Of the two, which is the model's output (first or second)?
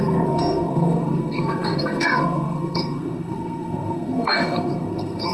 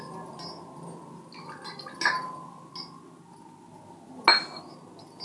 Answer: first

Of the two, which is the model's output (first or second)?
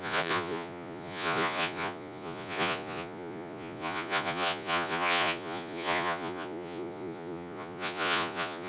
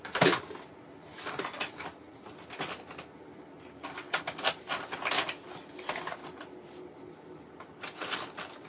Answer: first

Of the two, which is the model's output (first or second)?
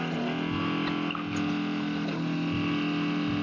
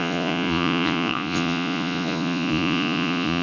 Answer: second